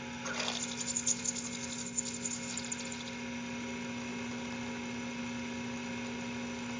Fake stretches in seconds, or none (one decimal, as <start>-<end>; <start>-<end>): none